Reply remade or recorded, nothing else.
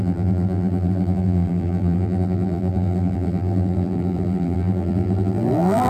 remade